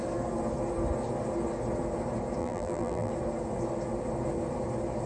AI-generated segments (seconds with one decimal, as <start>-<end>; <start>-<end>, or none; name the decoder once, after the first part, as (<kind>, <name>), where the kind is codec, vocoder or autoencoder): 2.4-3.1 (vocoder, BigVGAN v2)